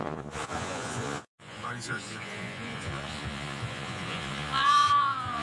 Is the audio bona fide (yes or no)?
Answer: no